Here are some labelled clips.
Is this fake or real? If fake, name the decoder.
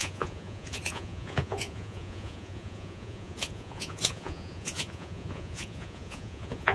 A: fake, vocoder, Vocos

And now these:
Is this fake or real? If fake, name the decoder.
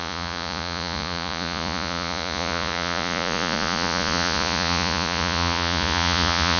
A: fake, vocoder, Vocos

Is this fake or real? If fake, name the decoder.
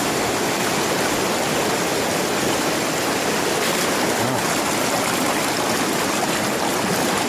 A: real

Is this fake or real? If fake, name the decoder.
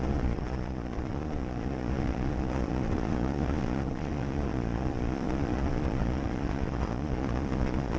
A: fake, vocoder, Vocos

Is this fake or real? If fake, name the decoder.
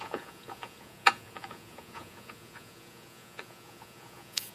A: fake, vocoder, Vocos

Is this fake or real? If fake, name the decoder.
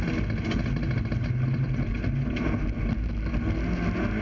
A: real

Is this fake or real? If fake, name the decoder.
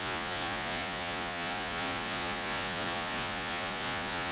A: fake, vocoder, Vocos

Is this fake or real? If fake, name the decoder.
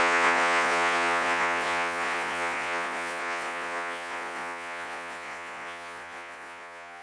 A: fake, vocoder, Vocos